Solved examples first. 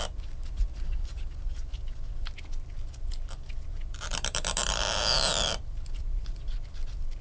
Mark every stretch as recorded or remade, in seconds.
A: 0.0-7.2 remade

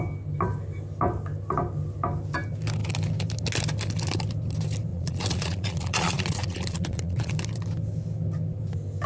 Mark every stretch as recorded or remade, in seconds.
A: 0.0-4.9 recorded; 4.9-7.3 remade; 7.3-9.1 recorded

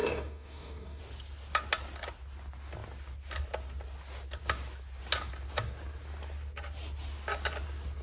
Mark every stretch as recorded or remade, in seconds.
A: 0.0-1.0 remade; 1.0-8.0 recorded